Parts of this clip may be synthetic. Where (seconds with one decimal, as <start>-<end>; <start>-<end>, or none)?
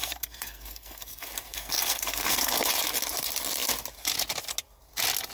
0.0-2.7